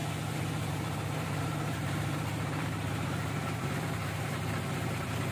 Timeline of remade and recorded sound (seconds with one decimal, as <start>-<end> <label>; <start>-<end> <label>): 0.0-0.7 recorded; 0.7-5.3 remade